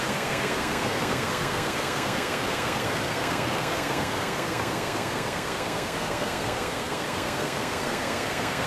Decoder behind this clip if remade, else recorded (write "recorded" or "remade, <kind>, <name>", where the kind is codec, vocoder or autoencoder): remade, codec, SNAC